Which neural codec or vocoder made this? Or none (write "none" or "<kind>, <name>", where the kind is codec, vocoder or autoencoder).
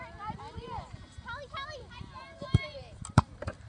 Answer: vocoder, BigVGAN v2